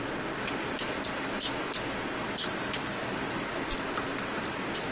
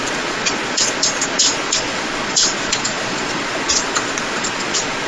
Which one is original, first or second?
first